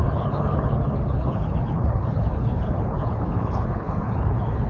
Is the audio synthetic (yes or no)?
yes